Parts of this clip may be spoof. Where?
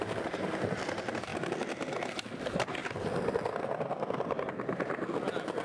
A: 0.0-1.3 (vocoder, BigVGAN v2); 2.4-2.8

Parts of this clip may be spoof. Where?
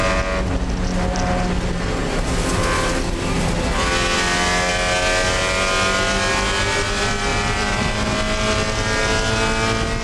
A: 7.3-7.9 (vocoder, BigVGAN v2)